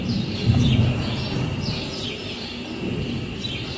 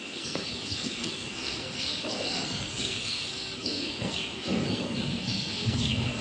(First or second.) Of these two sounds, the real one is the first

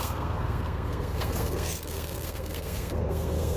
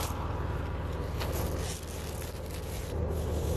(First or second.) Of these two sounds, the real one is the second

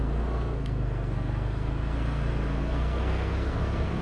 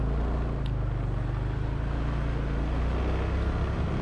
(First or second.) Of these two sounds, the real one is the second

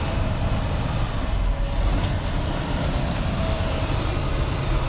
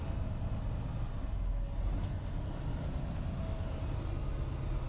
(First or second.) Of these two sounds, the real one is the second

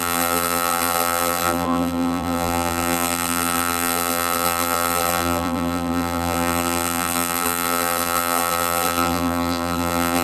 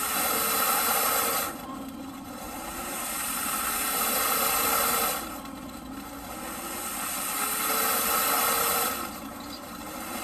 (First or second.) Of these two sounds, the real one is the second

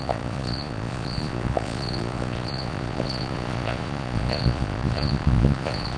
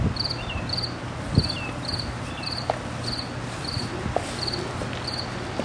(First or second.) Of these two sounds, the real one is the second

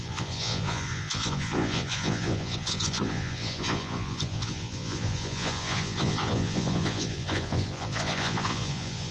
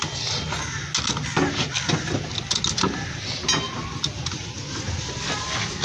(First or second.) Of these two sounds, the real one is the second